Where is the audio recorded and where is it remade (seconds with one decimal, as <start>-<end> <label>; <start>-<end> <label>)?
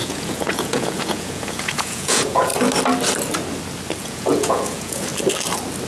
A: 0.0-2.5 remade; 2.5-4.0 recorded; 4.0-5.1 remade; 5.1-5.9 recorded